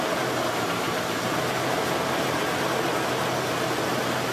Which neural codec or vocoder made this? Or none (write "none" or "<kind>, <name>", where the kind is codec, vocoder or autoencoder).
none